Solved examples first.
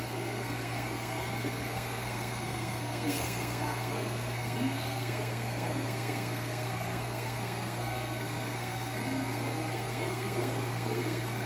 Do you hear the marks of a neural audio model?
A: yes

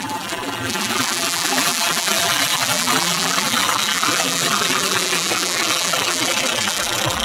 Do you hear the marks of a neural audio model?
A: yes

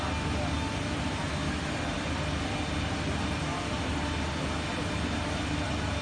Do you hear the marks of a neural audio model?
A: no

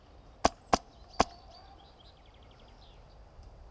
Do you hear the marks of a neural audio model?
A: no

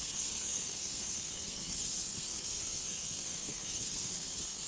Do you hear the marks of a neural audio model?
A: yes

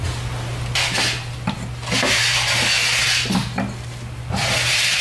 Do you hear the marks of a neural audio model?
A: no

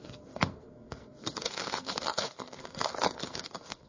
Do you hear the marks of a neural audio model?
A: yes